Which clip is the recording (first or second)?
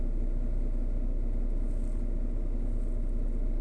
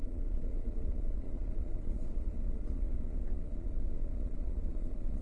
first